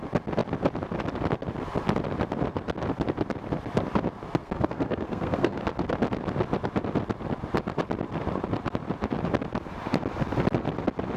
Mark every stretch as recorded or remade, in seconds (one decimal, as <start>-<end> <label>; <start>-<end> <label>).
0.0-4.4 recorded; 4.4-5.6 remade; 5.6-11.2 recorded